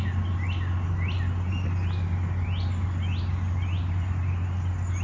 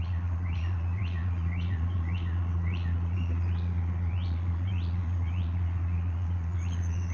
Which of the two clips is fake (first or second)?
second